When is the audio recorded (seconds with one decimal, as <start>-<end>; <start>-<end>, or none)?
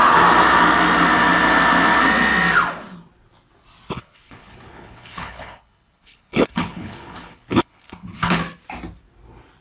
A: 0.0-3.9; 8.4-9.6